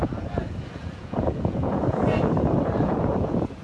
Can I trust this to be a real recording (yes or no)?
no